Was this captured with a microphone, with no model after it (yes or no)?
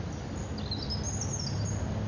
yes